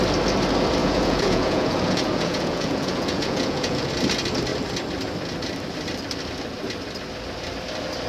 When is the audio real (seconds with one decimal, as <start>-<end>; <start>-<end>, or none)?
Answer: 0.0-0.8; 3.9-8.1